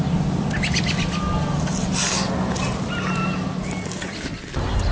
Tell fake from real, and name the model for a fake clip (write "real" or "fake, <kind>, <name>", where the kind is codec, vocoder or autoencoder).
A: real